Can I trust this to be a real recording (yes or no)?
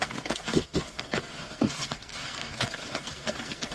no